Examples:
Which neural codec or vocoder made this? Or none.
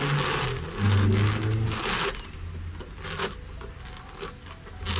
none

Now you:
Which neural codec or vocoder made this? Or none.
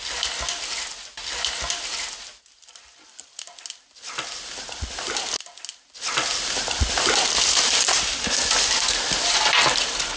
none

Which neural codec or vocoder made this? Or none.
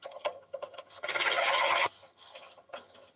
vocoder, HiFi-GAN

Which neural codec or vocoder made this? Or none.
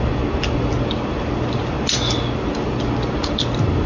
none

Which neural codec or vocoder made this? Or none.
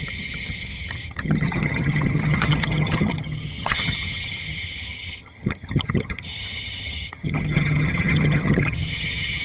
vocoder, HiFi-GAN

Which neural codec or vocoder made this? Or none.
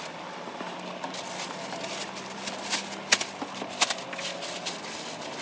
none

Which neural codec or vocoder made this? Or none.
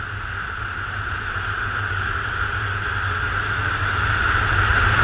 none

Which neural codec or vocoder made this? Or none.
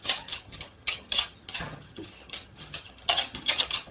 vocoder, HiFi-GAN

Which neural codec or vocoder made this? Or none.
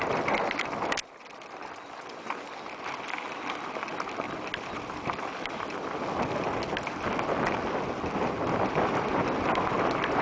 none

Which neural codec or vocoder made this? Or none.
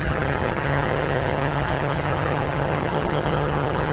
vocoder, HiFi-GAN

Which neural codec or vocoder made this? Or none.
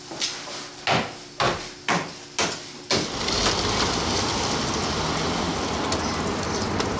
none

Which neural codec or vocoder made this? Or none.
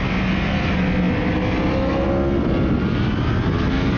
none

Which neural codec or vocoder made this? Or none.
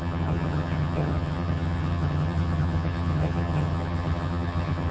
vocoder, HiFi-GAN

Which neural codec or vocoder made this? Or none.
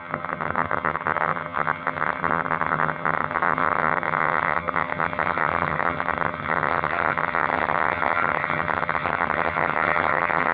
vocoder, HiFi-GAN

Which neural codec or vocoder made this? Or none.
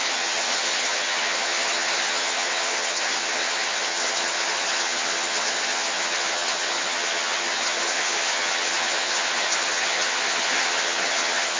vocoder, HiFi-GAN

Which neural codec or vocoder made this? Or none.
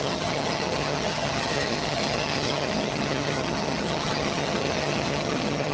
vocoder, HiFi-GAN